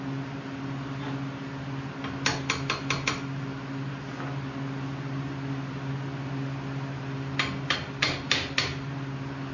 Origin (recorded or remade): recorded